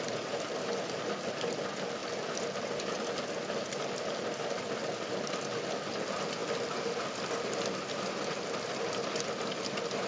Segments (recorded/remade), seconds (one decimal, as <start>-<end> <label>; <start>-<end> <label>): 0.0-2.0 recorded; 2.0-3.9 remade; 3.9-10.1 recorded